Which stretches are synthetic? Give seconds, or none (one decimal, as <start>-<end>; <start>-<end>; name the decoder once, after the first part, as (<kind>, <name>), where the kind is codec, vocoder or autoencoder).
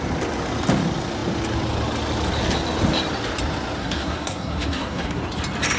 3.8-5.2 (codec, SNAC)